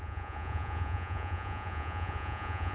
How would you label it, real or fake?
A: fake